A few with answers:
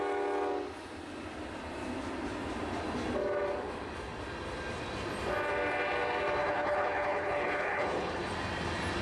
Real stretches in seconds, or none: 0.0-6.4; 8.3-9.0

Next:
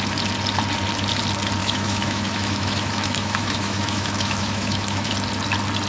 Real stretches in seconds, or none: 0.0-1.6; 5.1-5.9

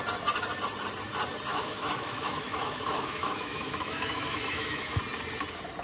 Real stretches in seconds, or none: 0.0-1.5; 5.0-5.8

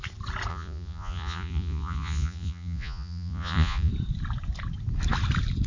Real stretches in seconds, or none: 0.0-0.5; 3.9-5.7

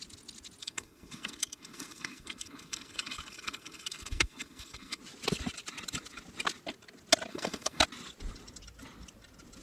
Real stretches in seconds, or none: 0.0-0.6; 5.0-7.3; 7.8-9.6

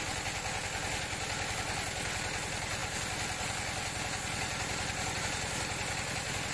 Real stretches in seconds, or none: 0.0-6.5

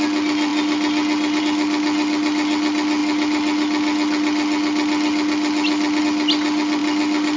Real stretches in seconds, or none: 0.0-7.4

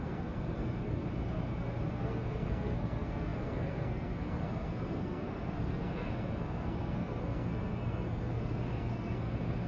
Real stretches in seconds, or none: 1.0-1.9